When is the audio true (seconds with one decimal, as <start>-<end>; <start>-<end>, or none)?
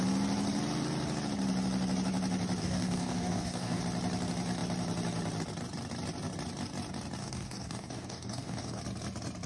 0.0-2.6; 3.8-7.2; 8.8-9.5